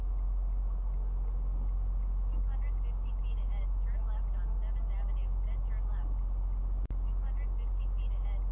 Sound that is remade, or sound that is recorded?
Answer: recorded